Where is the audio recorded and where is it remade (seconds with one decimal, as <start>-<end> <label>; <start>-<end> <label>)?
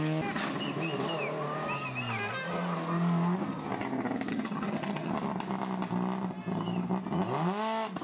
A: 0.0-4.3 recorded; 4.3-5.1 remade; 5.1-8.0 recorded